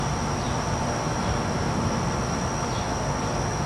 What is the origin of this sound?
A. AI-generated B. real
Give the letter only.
B